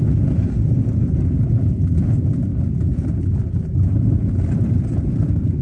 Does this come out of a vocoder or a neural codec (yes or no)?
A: no